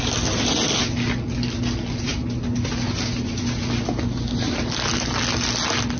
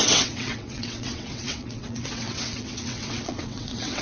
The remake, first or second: second